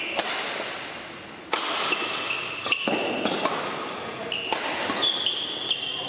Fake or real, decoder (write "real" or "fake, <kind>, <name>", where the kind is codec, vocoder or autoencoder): real